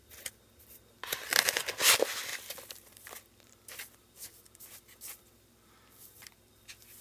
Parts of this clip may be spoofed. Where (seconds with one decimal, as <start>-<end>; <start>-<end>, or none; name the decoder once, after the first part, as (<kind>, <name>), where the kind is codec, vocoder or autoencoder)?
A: 2.3-6.5 (vocoder, BigVGAN v2)